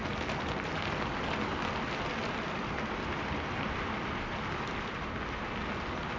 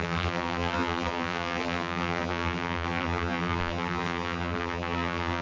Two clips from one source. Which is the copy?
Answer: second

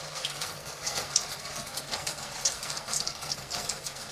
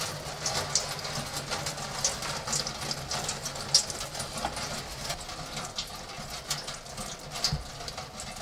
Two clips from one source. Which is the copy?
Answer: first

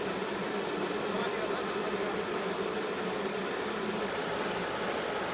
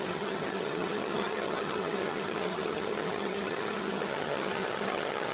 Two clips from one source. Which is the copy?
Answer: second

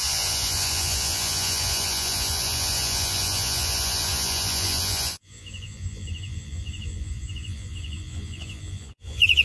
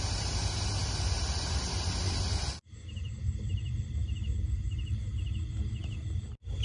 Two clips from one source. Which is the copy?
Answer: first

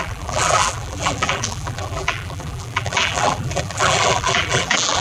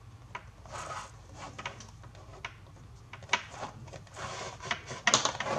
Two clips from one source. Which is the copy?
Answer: first